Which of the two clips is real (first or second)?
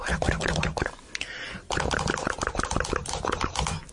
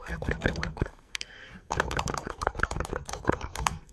first